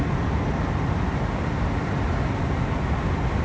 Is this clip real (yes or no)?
yes